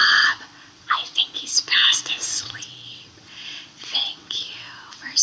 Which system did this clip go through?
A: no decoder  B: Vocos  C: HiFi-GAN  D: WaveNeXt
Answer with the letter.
D